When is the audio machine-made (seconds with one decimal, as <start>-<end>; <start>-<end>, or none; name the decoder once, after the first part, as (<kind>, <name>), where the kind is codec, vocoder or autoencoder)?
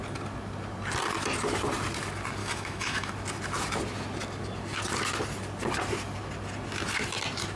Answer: 2.4-3.1 (autoencoder, DAC-VAE)